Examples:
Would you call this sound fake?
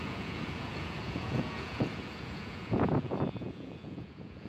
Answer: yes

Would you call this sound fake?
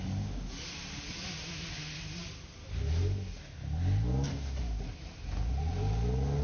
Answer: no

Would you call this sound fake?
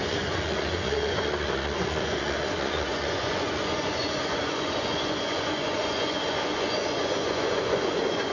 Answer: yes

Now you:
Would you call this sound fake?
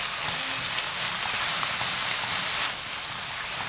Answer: no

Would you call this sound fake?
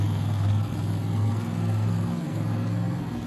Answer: yes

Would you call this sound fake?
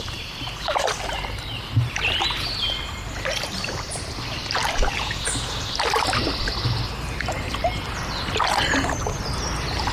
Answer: no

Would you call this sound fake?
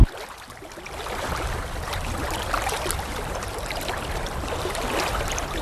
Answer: yes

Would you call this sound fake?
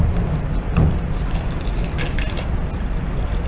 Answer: no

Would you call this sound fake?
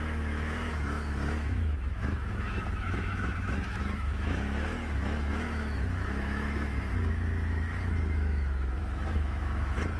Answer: yes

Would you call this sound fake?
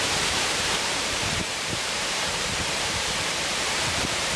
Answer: yes